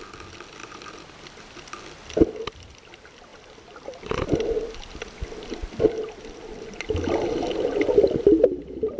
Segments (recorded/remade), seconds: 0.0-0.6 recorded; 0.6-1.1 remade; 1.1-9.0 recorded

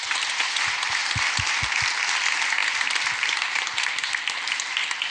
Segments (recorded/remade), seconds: 0.0-1.0 recorded; 1.0-2.0 remade; 2.0-2.6 recorded; 2.6-5.1 remade